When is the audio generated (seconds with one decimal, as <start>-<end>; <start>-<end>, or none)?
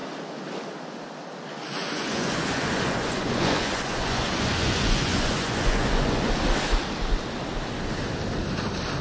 1.7-6.3